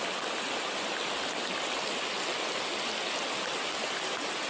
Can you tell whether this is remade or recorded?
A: recorded